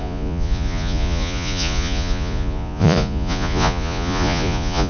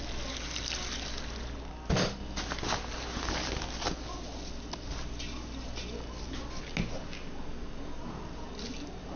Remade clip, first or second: first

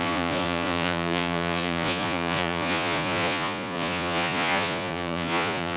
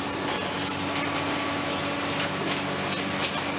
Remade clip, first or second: first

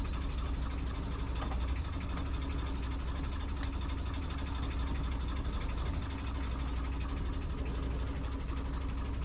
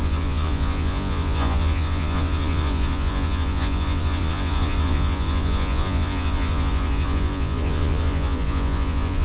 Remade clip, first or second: second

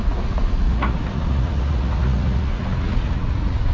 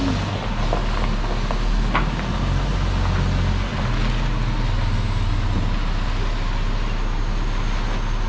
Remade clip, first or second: first